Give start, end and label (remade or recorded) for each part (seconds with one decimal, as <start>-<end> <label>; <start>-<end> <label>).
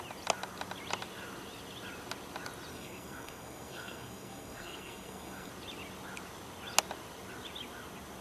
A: 0.0-2.7 recorded; 2.7-5.5 remade; 5.5-8.2 recorded